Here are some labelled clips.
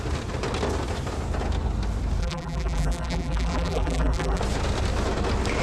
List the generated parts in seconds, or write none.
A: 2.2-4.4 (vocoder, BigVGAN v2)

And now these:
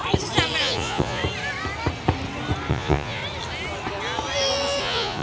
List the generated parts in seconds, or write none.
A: 0.6-1.2 (vocoder, Vocos); 2.7-3.2; 4.8-5.2

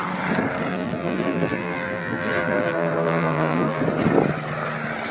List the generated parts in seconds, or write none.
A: 0.7-3.8 (vocoder, BigVGAN v2)

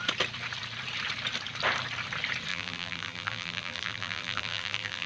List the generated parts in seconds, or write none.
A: 2.5-5.1 (vocoder, BigVGAN v2)

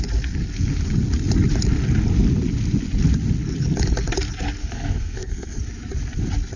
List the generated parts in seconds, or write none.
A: 4.6-5.6 (codec, SNAC)

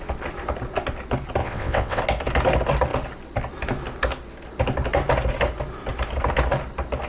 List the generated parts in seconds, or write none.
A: 1.4-2.0 (vocoder, WaveNeXt)